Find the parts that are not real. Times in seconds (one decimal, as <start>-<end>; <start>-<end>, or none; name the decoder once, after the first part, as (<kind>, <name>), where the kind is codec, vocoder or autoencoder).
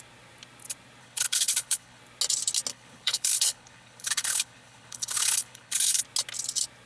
1.0-2.0 (codec, HILCodec); 2.7-6.0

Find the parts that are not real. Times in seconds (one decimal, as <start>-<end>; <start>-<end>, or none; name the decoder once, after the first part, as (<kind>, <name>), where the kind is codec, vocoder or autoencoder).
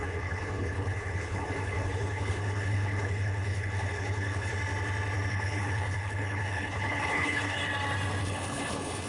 0.0-4.5 (codec, HILCodec); 5.3-7.6; 8.2-9.1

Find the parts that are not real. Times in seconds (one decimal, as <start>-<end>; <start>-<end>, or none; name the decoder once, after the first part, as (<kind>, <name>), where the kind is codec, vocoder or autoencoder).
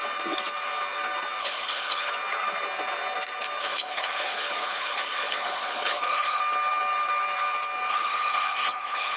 1.4-2.1 (codec, HILCodec); 3.6-6.4; 7.9-9.2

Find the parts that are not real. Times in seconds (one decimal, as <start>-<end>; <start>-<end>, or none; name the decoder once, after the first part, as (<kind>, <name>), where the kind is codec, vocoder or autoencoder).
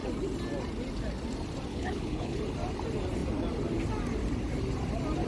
1.7-2.4 (codec, HILCodec)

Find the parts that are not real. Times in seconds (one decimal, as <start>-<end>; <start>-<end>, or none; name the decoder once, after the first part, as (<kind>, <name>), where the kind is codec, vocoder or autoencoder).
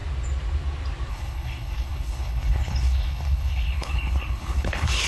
1.1-5.1 (codec, HILCodec)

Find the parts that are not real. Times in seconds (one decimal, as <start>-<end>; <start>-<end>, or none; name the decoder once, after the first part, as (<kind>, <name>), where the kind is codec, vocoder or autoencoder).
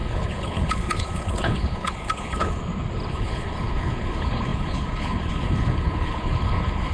0.0-2.6 (codec, HILCodec); 3.1-6.9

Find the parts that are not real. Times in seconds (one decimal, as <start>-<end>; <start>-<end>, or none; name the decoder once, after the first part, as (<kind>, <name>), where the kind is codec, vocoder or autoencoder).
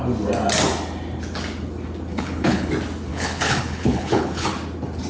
2.1-2.7 (codec, HILCodec); 3.1-4.5